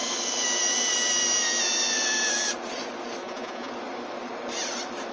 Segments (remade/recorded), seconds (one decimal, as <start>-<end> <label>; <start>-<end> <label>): 0.0-3.2 recorded; 3.2-3.7 remade; 3.7-5.1 recorded